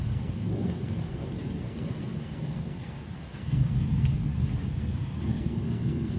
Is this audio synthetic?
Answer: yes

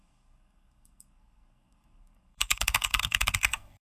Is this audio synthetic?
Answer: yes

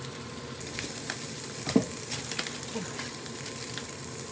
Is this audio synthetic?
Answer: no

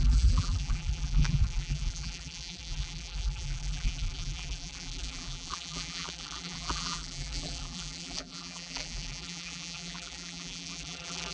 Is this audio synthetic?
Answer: yes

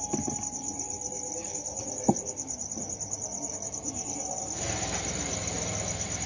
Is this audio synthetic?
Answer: no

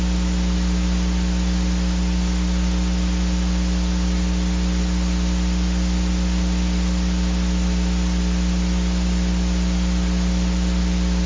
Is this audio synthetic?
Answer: no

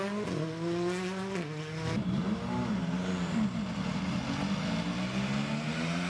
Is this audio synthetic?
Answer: no